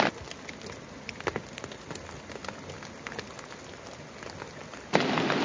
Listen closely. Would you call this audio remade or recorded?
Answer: recorded